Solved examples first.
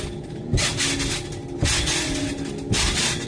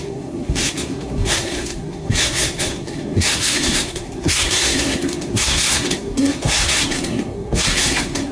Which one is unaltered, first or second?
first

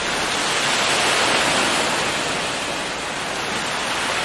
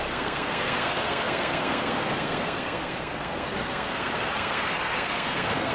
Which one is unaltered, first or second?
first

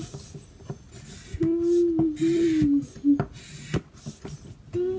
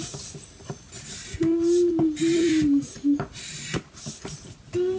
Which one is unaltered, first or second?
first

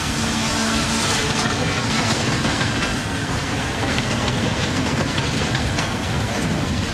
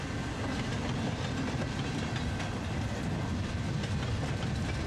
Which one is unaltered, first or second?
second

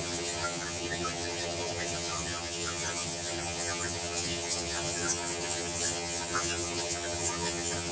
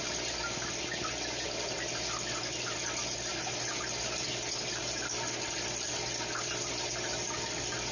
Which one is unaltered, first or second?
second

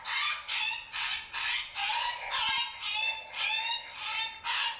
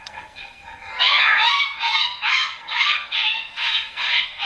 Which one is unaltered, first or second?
first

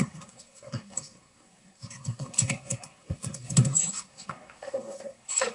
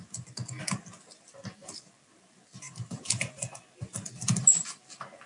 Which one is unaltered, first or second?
second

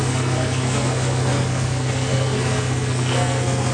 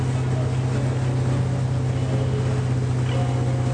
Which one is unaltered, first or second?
second